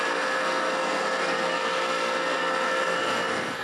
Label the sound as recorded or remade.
remade